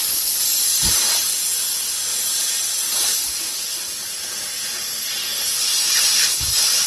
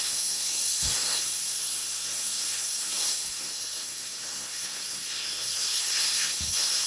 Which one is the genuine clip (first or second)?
first